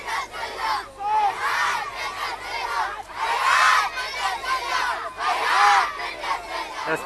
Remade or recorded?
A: recorded